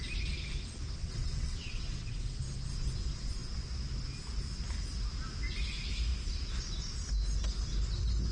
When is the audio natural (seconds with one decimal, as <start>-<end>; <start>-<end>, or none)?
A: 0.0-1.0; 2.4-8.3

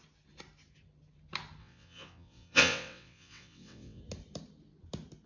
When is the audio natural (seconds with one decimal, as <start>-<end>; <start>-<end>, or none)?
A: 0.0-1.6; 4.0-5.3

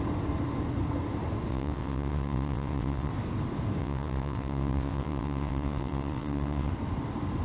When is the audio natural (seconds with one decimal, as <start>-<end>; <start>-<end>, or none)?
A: 0.0-1.5; 3.1-3.8; 6.7-7.4

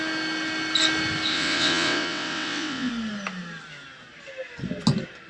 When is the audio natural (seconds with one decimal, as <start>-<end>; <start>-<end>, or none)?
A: 0.0-1.3; 2.9-5.3

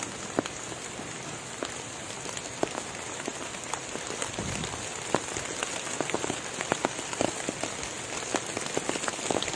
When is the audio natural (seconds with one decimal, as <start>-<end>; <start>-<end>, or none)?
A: 0.0-9.6

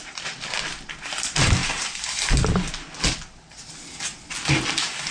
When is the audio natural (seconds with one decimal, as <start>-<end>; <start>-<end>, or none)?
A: 0.0-5.1

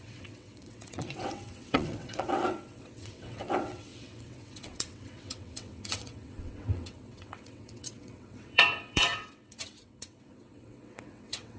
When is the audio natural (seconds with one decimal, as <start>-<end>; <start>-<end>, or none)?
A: none